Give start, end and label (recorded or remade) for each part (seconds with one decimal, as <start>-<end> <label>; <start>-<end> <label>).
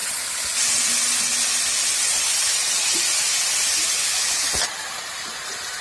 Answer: 0.0-4.0 recorded; 4.0-4.5 remade; 4.5-5.8 recorded